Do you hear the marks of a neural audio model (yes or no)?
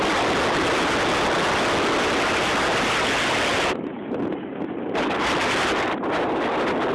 no